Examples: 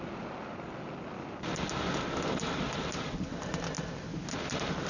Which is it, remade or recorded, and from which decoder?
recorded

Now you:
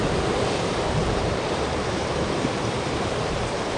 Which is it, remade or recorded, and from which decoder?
remade, vocoder, BigVGAN v2